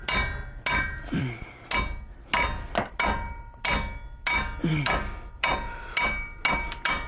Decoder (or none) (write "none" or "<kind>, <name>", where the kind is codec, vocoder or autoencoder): none